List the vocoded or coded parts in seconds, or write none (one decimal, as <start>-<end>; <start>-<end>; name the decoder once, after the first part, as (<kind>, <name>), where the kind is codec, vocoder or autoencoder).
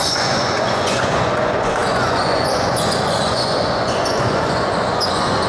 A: 0.0-5.5 (vocoder, Vocos)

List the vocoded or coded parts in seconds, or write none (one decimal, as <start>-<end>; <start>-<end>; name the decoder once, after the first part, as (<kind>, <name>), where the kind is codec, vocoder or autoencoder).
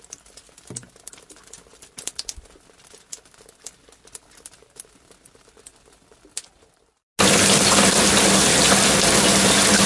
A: none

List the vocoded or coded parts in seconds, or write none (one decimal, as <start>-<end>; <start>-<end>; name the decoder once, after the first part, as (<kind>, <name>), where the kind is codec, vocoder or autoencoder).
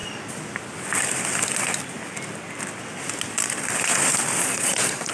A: 4.4-5.1 (vocoder, Vocos)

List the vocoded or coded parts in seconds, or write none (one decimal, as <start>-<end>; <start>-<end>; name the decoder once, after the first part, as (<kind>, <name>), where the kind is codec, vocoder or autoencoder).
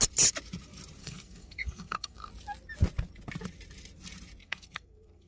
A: 1.0-2.3 (codec, SNAC); 4.4-5.3